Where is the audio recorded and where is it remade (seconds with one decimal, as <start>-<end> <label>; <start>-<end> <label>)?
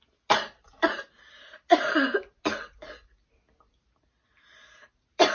0.0-5.3 recorded